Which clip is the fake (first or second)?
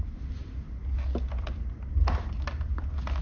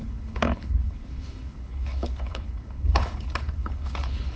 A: second